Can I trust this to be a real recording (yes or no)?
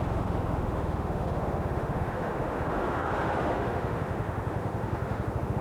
no